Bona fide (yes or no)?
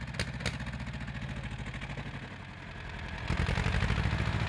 yes